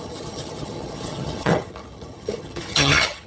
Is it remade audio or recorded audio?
remade